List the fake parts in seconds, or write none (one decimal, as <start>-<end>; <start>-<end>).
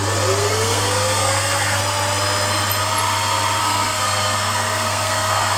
0.4-1.8; 3.6-5.6